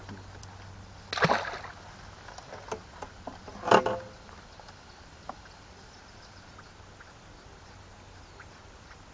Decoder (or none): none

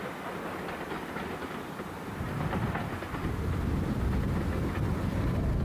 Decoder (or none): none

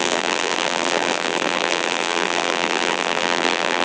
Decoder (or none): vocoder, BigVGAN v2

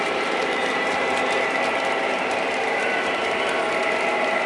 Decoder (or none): vocoder, BigVGAN v2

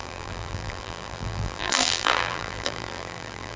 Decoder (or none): vocoder, BigVGAN v2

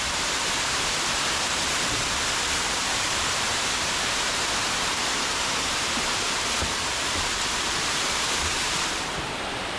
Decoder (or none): vocoder, BigVGAN v2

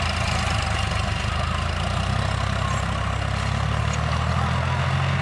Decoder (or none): none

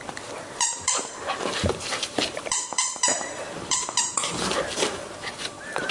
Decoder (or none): vocoder, BigVGAN v2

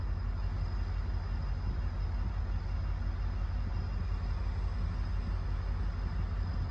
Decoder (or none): none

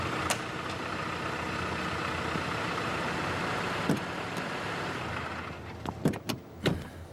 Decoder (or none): none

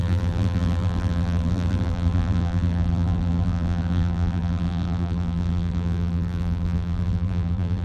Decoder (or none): vocoder, BigVGAN v2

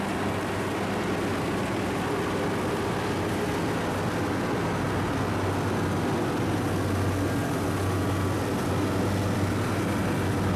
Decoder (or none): none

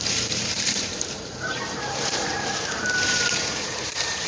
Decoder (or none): vocoder, BigVGAN v2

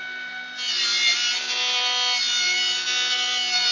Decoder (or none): none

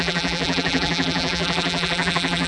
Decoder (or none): vocoder, BigVGAN v2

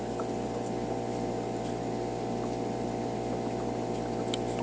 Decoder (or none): none